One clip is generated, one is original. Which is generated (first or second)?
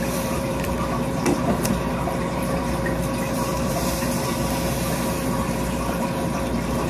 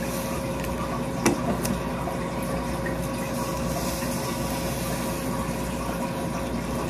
first